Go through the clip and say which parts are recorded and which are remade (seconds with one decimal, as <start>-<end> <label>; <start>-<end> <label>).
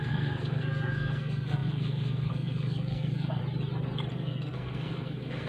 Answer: 0.0-3.4 remade; 3.4-4.1 recorded; 4.1-5.5 remade